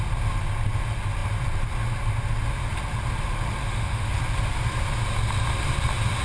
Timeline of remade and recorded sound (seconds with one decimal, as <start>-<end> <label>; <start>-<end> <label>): 0.0-3.6 recorded; 3.6-4.1 remade; 4.1-6.2 recorded